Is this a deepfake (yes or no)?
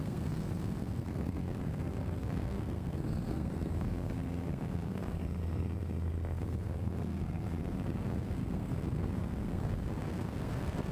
yes